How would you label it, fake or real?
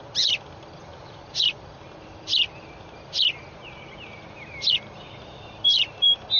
fake